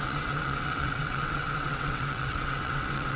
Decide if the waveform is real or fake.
fake